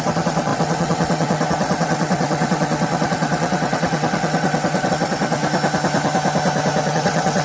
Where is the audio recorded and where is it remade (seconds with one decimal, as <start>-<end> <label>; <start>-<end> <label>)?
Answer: 0.0-5.4 remade; 5.4-6.9 recorded; 6.9-7.4 remade